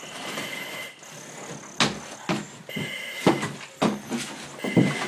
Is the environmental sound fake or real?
real